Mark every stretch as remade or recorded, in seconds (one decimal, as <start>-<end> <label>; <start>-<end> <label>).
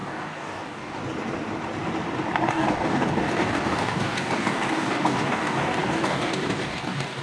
0.0-1.0 remade; 1.0-2.5 recorded; 2.5-7.2 remade